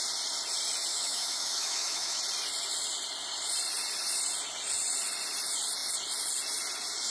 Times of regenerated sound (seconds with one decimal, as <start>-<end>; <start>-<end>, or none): 0.9-2.2